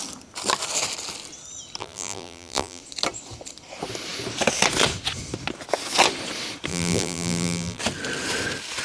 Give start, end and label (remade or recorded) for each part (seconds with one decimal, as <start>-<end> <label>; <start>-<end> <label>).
0.0-1.8 recorded; 1.8-2.8 remade; 2.8-6.7 recorded; 6.7-7.8 remade; 7.8-8.8 recorded